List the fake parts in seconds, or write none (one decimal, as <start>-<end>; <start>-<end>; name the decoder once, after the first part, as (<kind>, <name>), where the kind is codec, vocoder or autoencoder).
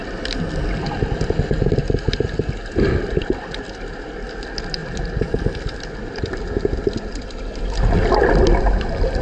none